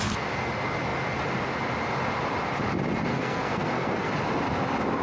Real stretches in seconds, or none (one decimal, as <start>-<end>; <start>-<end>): 0.0-3.1; 4.1-5.0